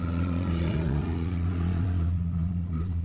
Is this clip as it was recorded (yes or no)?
no